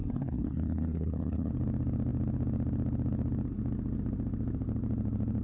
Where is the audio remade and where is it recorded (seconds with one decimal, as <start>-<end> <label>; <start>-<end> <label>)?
0.0-1.5 remade; 1.5-5.4 recorded